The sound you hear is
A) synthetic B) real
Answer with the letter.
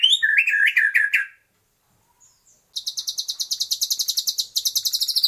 B